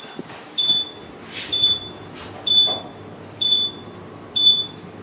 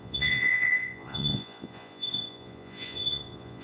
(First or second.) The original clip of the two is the first